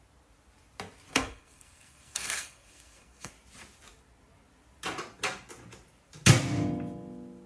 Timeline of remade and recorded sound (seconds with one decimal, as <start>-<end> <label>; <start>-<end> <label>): 0.0-1.1 recorded; 1.1-3.3 remade; 3.3-7.5 recorded